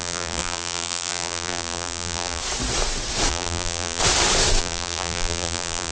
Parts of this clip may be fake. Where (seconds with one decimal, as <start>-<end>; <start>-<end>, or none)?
0.0-2.4; 3.3-4.0; 4.6-5.9